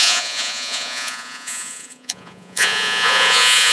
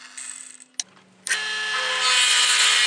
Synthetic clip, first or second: first